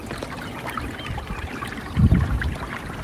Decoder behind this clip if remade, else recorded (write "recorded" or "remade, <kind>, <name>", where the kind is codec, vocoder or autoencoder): recorded